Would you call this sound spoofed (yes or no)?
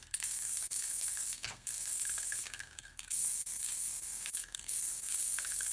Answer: yes